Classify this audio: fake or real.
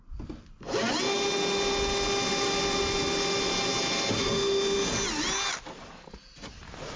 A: real